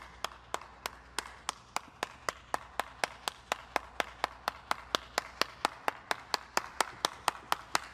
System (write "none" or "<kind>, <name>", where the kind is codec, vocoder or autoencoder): none